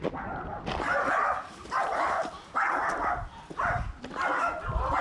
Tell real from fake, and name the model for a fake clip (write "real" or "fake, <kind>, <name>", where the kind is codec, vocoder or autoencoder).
real